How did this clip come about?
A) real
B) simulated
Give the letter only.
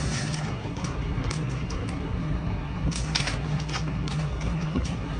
B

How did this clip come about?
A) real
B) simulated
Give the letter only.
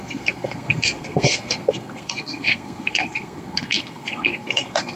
B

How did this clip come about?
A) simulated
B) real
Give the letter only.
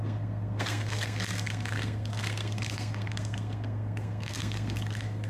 A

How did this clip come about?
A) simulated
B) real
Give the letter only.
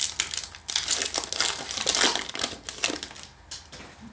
B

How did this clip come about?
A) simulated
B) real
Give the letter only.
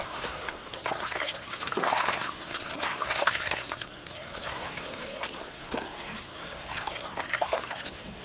A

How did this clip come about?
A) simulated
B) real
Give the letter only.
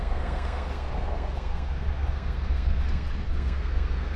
A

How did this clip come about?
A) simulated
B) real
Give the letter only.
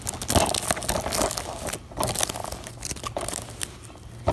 B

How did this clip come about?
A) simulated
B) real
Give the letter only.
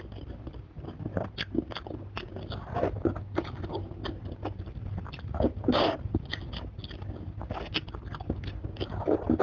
B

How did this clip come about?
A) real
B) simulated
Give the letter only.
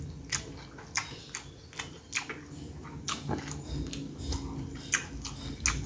A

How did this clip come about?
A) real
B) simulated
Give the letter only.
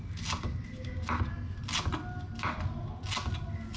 A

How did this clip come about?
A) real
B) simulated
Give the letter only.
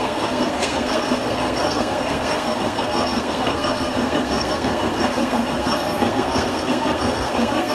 B